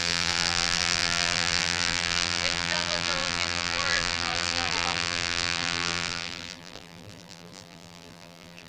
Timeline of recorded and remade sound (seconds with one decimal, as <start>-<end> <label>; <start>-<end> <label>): 0.0-8.7 remade